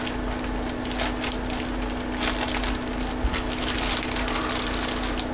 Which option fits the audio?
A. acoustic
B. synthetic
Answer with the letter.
A